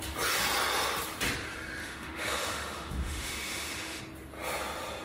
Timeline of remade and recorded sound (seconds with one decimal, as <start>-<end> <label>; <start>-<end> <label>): 0.0-1.8 recorded; 1.8-4.0 remade; 4.0-5.0 recorded